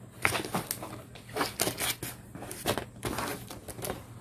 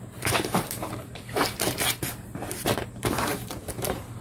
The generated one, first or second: second